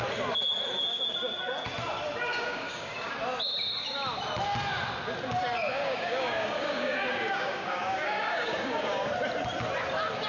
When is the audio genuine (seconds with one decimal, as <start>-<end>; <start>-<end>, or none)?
0.0-2.3; 3.1-5.7; 9.1-10.3